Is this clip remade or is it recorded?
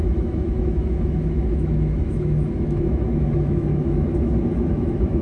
remade